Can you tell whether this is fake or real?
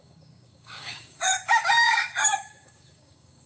fake